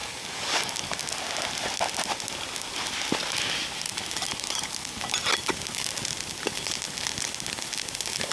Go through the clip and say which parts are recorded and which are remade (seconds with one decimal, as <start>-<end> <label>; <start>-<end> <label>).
0.0-0.7 remade; 0.7-8.3 recorded